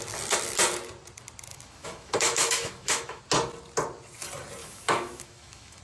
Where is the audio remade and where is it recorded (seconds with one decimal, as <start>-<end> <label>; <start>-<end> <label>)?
0.0-1.5 recorded; 1.5-3.2 remade; 3.2-4.6 recorded; 4.6-5.8 remade